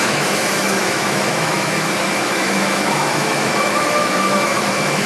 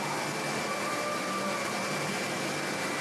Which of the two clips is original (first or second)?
second